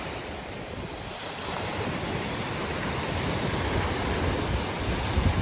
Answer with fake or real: fake